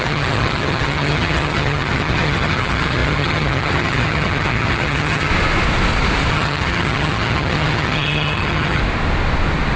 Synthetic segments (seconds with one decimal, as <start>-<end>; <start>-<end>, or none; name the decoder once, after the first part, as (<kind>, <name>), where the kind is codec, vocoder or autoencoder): 0.0-5.3 (vocoder, HiFi-GAN); 6.3-8.8